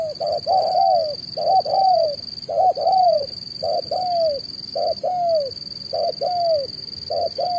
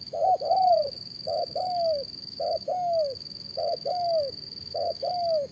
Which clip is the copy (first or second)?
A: second